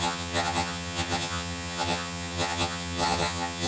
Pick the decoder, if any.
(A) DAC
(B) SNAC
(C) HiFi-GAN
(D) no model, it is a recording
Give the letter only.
C